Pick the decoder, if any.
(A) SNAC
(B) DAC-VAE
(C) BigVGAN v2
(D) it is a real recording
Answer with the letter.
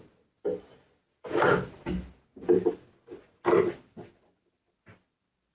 D